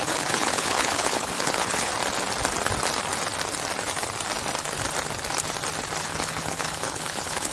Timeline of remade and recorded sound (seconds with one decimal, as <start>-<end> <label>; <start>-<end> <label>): 0.0-1.9 remade; 1.9-6.0 recorded; 6.0-7.5 remade